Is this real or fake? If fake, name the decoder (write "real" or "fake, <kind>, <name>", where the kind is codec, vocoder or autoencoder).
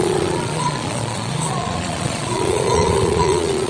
fake, vocoder, Vocos